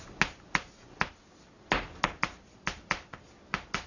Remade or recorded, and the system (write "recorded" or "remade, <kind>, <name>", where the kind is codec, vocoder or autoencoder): recorded